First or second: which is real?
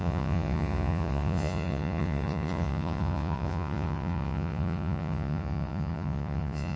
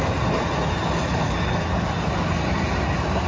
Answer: second